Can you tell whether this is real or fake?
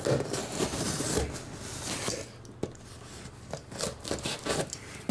real